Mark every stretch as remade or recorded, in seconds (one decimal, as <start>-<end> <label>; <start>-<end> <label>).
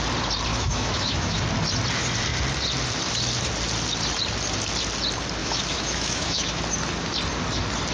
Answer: 0.0-0.5 recorded; 0.5-1.4 remade; 1.4-5.4 recorded; 5.4-6.6 remade; 6.6-7.9 recorded